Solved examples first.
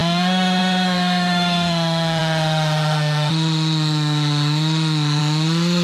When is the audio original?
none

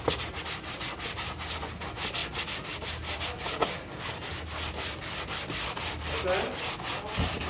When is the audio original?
0.0-7.5

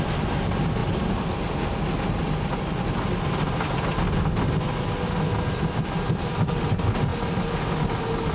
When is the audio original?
0.0-8.3